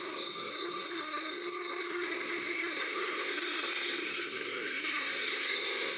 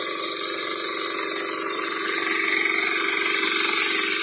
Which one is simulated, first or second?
first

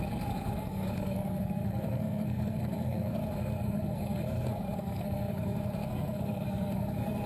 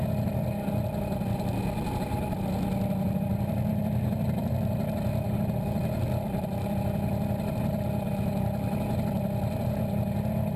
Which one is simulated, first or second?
first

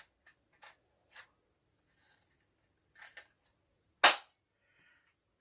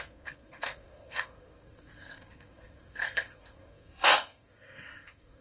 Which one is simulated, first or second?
second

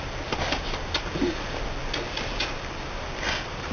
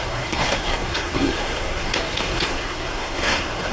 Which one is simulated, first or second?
second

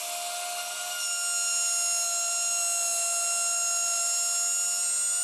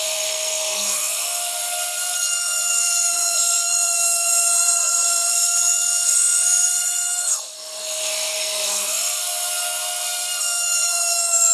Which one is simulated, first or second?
second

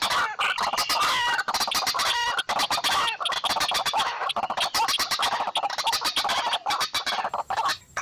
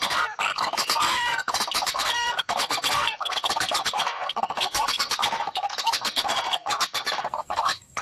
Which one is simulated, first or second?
second